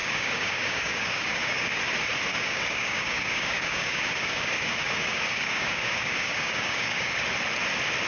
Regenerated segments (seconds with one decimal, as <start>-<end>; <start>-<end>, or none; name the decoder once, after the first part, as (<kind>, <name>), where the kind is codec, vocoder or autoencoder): 0.0-1.8 (codec, DAC); 2.3-7.2